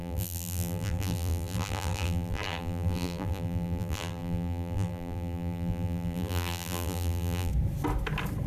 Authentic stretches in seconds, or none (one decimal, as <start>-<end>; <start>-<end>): 7.5-8.5